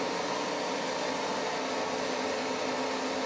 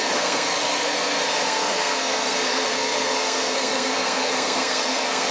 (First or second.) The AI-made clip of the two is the second